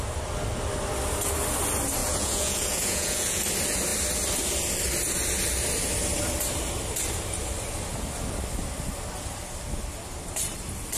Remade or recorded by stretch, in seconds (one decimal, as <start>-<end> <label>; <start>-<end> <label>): 0.0-2.0 recorded; 2.0-3.4 remade; 3.4-11.0 recorded